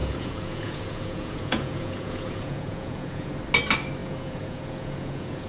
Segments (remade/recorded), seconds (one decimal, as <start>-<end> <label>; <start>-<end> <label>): 0.0-3.3 remade; 3.3-4.0 recorded; 4.0-5.5 remade